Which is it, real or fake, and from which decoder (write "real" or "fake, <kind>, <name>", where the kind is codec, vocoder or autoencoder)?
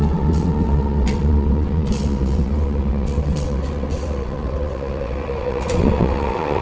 fake, vocoder, WaveNeXt